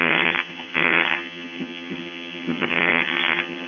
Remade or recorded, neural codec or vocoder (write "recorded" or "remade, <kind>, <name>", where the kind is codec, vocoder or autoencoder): remade, vocoder, HiFi-GAN